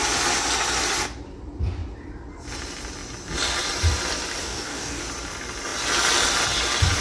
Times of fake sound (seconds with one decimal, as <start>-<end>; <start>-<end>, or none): 4.4-5.0